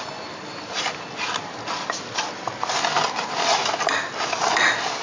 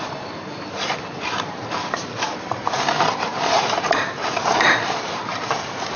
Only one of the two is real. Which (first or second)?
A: first